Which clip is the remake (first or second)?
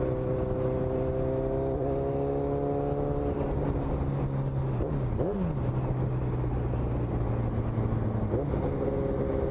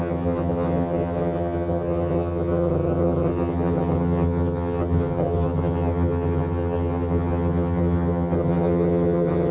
second